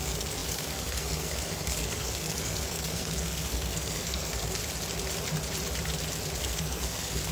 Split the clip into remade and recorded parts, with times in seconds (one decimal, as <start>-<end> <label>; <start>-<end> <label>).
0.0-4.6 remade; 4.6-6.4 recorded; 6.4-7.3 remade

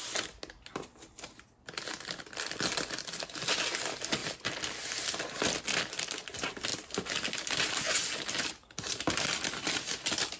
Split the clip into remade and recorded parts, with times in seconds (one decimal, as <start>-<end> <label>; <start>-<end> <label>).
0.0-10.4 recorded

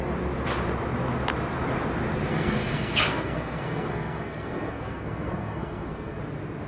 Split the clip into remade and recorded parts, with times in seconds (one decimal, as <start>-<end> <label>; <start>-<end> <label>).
0.0-2.3 recorded; 2.3-6.2 remade; 6.2-6.7 recorded

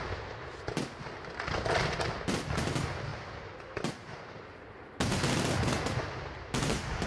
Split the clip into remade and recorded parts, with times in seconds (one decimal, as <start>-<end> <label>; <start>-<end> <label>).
0.0-7.1 recorded

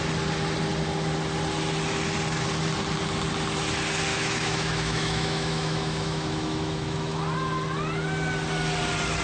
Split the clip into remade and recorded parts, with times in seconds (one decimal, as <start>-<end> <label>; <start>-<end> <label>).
0.0-4.1 recorded; 4.1-7.2 remade; 7.2-9.2 recorded

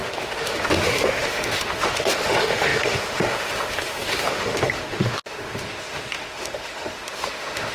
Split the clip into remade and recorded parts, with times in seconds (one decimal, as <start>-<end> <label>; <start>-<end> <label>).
0.0-7.7 remade

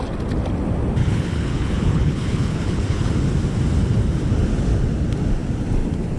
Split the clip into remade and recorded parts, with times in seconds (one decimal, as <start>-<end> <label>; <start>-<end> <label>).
0.0-1.0 recorded; 1.0-3.1 remade; 3.1-6.2 recorded

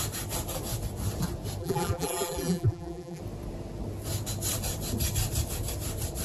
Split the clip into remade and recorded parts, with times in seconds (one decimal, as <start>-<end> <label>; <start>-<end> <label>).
0.0-1.6 recorded; 1.6-3.2 remade; 3.2-6.2 recorded